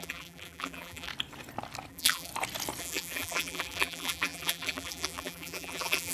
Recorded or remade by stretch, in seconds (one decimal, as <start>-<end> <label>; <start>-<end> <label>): 0.0-1.1 remade; 1.1-1.9 recorded; 1.9-2.3 remade; 2.3-2.8 recorded; 2.8-6.1 remade